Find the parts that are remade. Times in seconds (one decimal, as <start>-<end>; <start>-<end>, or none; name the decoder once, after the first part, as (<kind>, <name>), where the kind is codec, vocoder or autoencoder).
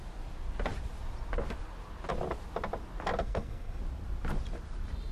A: 3.2-3.8 (codec, SNAC)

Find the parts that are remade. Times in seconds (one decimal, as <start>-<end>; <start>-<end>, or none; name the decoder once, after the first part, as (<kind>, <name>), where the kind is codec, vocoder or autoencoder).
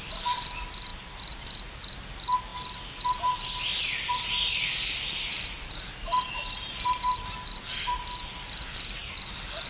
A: none